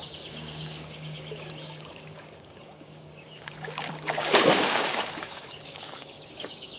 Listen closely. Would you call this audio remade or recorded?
remade